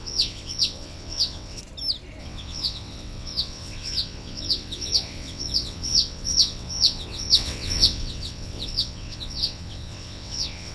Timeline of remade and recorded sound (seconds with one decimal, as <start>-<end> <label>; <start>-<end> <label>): 0.0-1.6 remade; 1.6-2.2 recorded; 2.2-10.7 remade